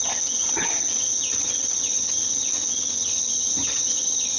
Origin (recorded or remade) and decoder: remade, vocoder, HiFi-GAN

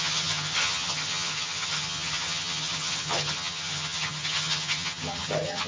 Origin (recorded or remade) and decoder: remade, vocoder, HiFi-GAN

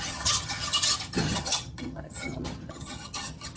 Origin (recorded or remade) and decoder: remade, vocoder, HiFi-GAN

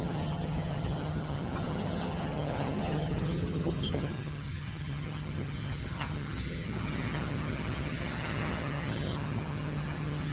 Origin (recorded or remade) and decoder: remade, vocoder, HiFi-GAN